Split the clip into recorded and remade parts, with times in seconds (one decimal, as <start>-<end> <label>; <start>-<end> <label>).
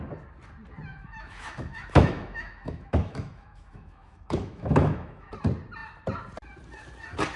0.0-0.9 recorded; 0.9-5.3 remade; 5.3-7.4 recorded